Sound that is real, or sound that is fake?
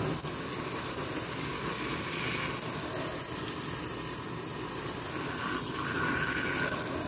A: real